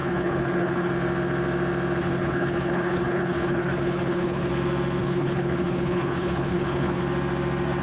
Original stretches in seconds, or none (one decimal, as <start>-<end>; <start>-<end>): 0.9-2.0; 4.5-5.0; 7.0-7.8